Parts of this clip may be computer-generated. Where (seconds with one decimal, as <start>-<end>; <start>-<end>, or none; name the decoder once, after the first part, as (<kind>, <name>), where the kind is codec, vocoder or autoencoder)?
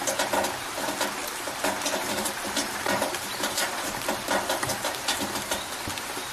1.2-5.0 (vocoder, BigVGAN v2)